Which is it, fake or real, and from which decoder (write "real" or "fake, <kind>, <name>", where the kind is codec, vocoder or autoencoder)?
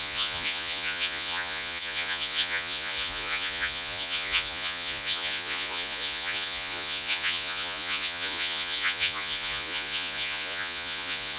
fake, vocoder, Vocos